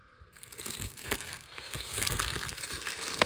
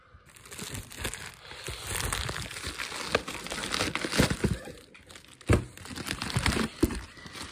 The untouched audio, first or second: second